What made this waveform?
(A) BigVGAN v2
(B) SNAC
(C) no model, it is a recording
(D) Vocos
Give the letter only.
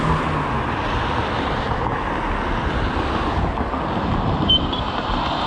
C